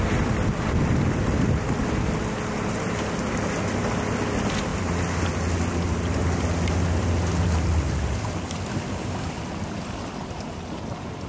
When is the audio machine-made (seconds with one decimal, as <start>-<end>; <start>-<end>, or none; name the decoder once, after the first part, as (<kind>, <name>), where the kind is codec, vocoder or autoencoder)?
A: none